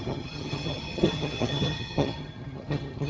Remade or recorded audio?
remade